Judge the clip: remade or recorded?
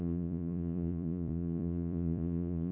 remade